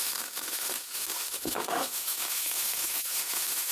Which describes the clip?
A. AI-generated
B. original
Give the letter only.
A